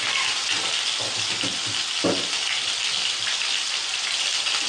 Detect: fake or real real